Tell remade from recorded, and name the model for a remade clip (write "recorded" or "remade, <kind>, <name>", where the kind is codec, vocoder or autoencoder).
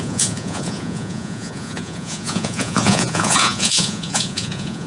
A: remade, vocoder, Vocos